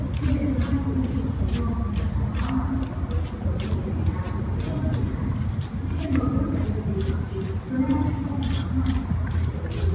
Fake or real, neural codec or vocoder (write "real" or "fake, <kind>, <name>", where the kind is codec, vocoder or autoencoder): real